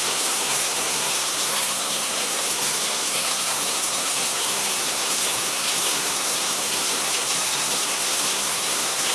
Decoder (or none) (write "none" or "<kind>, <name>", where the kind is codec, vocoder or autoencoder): codec, SNAC